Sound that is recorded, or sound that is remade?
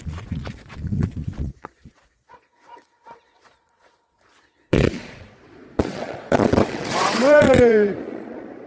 remade